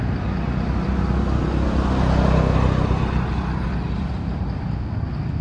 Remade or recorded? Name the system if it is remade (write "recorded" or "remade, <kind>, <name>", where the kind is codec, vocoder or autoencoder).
recorded